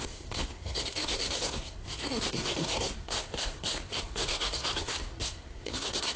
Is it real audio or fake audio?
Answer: fake